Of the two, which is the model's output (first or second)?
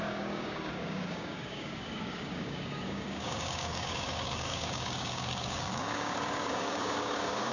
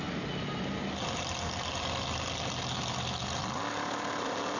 first